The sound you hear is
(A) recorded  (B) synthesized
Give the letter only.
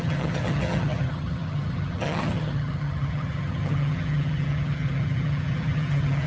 B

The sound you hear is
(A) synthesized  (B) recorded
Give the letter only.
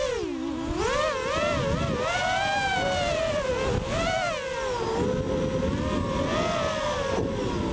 B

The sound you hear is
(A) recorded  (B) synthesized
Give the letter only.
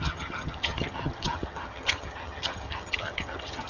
B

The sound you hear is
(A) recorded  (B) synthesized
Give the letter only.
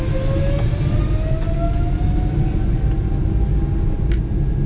A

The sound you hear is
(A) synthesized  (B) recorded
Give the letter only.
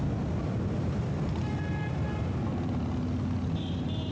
B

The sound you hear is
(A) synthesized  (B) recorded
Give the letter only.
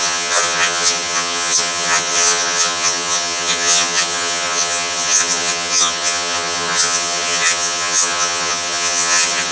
A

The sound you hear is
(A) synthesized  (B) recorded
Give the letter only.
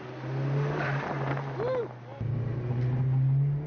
B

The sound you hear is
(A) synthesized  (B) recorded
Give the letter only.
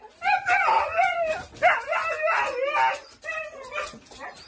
B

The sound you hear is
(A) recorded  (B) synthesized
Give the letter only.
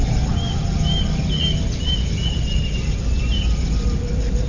A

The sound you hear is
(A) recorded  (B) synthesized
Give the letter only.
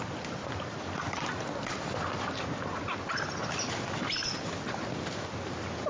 A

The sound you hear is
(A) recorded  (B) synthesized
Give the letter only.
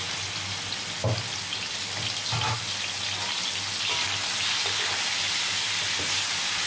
A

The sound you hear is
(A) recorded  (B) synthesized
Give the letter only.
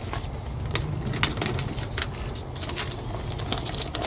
A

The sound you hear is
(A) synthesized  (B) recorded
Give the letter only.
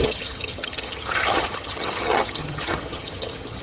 A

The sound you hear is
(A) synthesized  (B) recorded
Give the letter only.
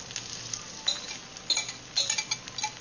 B